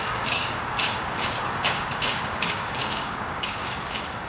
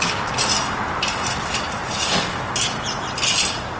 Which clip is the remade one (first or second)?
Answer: first